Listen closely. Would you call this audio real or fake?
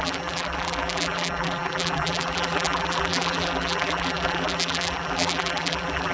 fake